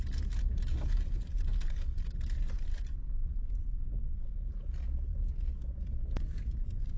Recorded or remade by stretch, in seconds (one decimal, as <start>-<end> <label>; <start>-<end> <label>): 0.0-7.0 recorded